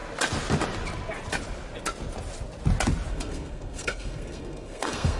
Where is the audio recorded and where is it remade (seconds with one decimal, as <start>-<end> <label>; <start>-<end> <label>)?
0.0-3.1 recorded; 3.1-5.2 remade